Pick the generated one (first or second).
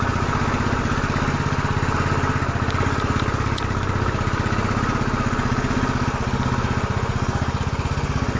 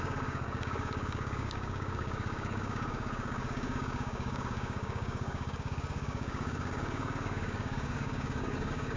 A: second